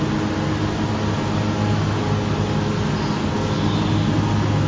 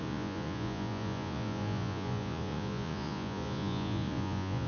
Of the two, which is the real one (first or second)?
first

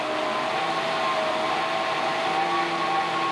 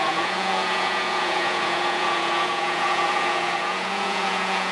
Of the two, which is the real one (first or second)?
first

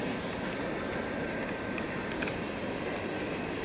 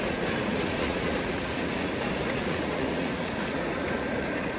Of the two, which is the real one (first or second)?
first